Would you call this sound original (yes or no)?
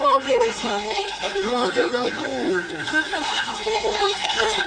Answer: no